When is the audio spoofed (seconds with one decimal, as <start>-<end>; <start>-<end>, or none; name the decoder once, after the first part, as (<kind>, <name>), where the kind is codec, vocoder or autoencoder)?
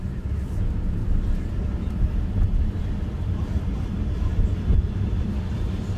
2.8-4.2 (vocoder, BigVGAN v2); 4.7-6.0